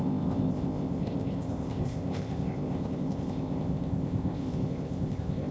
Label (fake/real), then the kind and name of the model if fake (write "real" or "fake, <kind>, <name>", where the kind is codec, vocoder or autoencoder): fake, codec, ZipCodec